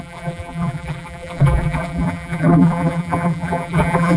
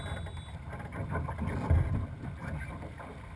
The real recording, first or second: second